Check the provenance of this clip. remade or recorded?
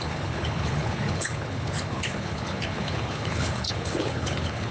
remade